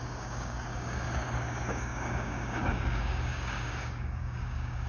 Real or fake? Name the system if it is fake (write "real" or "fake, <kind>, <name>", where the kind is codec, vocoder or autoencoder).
fake, codec, DAC